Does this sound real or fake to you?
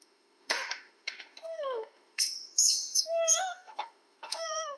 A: fake